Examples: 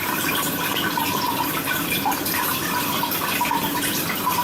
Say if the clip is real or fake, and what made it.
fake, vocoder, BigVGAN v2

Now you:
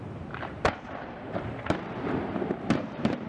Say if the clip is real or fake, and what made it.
fake, vocoder, BigVGAN v2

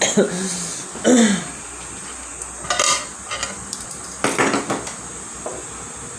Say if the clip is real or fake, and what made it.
real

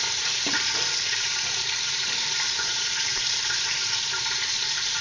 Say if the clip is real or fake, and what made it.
fake, vocoder, BigVGAN v2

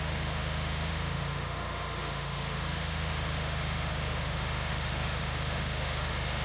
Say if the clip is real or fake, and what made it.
fake, autoencoder, DAC-VAE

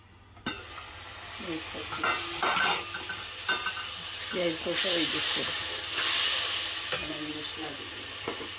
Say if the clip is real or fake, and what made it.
real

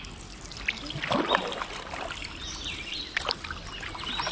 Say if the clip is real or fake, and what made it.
real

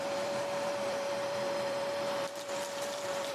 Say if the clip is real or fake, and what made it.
fake, vocoder, BigVGAN v2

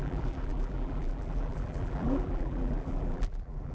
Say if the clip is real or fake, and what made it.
fake, vocoder, BigVGAN v2